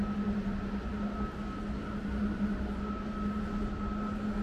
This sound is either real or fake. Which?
real